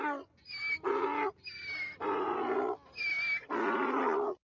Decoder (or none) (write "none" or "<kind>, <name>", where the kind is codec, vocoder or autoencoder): none